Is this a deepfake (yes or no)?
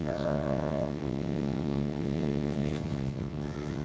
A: yes